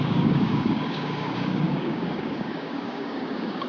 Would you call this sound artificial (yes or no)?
yes